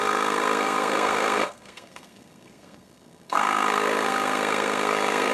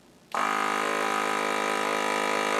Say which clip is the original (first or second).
second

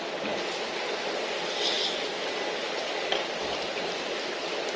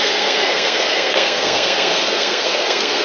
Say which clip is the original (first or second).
first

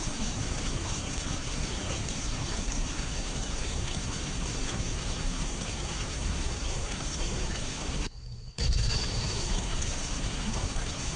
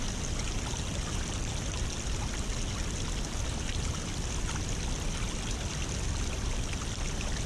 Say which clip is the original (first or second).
second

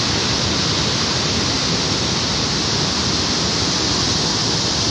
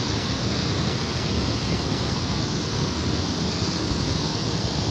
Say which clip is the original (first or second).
first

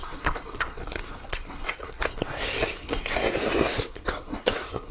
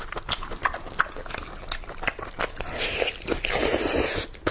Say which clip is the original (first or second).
second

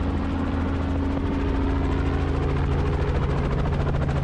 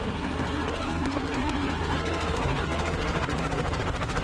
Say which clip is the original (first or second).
first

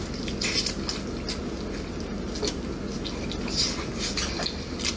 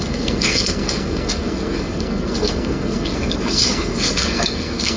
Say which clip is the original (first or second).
first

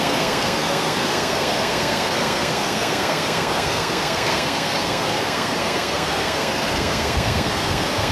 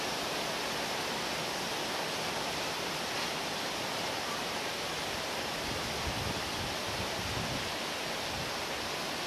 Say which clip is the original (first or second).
second